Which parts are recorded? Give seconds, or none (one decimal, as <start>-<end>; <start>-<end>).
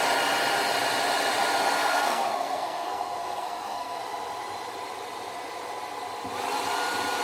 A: 0.0-1.8; 4.0-7.2